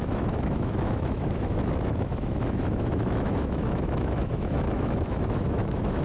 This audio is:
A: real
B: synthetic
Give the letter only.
B